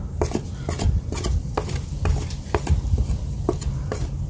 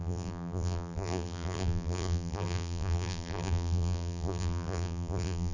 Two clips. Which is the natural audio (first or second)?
first